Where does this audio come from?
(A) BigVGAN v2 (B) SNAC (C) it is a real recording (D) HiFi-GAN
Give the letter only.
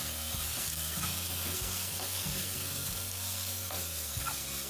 B